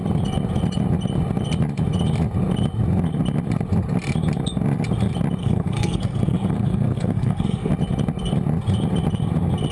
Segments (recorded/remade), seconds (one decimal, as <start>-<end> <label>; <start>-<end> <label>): 0.0-5.4 recorded; 5.4-7.7 remade; 7.7-9.7 recorded